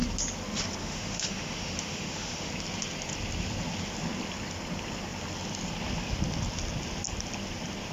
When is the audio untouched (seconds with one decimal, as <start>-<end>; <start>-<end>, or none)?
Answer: 0.0-0.8; 2.5-7.9